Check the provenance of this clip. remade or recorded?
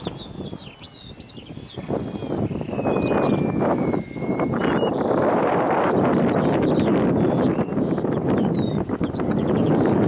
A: recorded